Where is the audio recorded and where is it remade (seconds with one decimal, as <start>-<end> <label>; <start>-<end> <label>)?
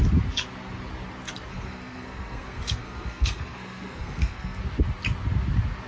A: 0.0-1.5 recorded; 1.5-4.6 remade; 4.6-5.9 recorded